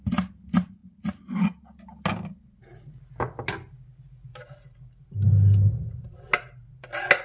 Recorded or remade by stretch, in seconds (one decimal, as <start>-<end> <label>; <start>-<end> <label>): 0.0-7.2 recorded